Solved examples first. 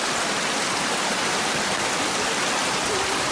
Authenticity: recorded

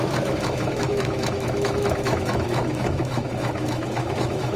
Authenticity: remade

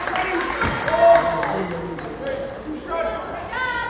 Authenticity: recorded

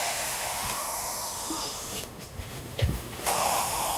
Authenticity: remade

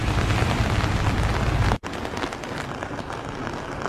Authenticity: recorded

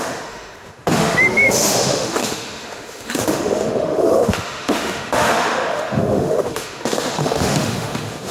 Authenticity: remade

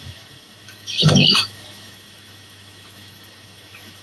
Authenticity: remade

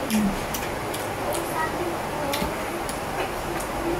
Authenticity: recorded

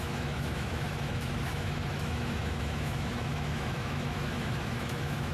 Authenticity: remade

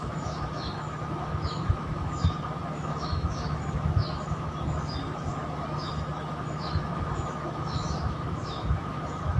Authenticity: remade